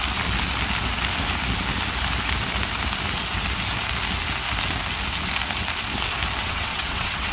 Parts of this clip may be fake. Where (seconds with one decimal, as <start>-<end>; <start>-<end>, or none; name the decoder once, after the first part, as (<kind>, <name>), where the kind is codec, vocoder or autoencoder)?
6.4-7.3 (vocoder, WaveNeXt)